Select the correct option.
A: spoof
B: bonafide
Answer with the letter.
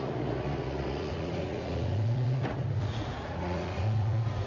A